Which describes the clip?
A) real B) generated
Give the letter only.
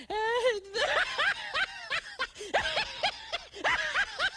A